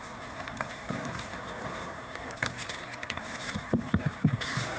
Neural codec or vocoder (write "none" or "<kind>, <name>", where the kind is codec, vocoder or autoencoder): codec, SNAC